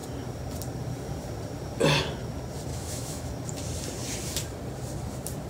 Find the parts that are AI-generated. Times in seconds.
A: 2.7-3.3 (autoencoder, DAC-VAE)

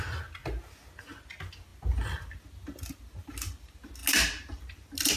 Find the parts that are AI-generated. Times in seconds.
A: none

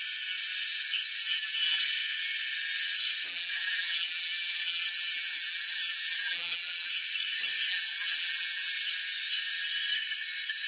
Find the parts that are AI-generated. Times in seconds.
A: 1.2-1.8 (vocoder, BigVGAN v2); 3.3-6.9; 7.7-8.7

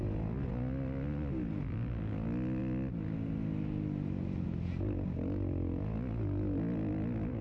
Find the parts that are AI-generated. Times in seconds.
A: none

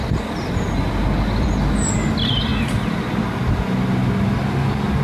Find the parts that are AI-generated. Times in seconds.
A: none